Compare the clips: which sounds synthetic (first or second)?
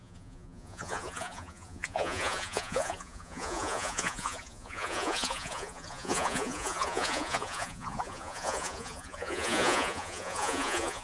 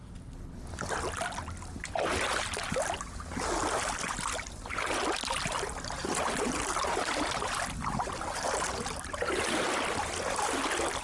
first